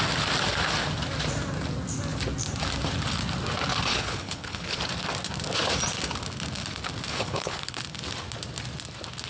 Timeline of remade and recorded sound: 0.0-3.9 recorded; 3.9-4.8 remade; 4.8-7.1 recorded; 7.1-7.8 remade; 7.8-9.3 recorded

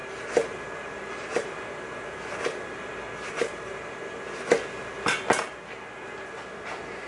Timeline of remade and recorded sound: 0.0-7.1 recorded

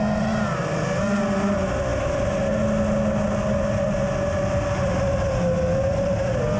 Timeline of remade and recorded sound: 0.0-6.6 recorded

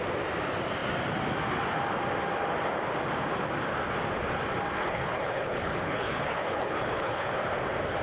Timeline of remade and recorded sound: 0.0-4.8 recorded; 4.8-7.3 remade; 7.3-8.0 recorded

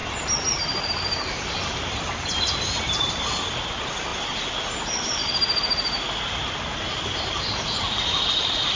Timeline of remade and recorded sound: 0.0-8.8 recorded

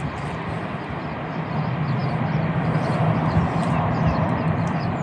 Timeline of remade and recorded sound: 0.0-5.0 recorded

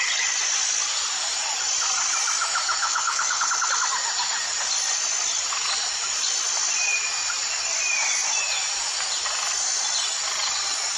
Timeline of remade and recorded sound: 0.0-2.8 recorded; 2.8-3.5 remade; 3.5-11.0 recorded